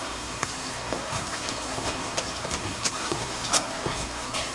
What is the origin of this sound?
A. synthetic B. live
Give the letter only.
A